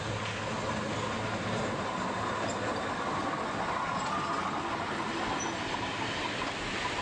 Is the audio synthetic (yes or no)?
no